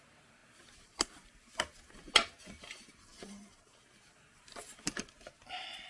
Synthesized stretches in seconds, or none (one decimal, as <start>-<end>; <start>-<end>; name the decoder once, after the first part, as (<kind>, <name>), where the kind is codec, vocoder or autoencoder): none